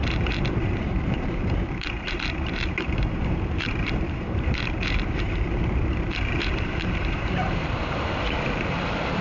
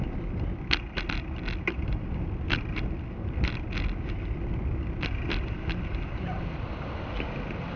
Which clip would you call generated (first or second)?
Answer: first